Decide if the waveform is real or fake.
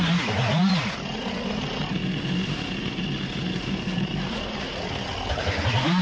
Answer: real